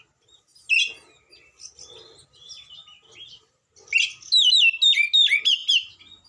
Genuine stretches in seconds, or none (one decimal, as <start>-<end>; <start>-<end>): 0.0-6.3